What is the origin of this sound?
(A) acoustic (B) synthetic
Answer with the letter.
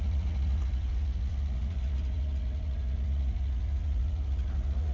B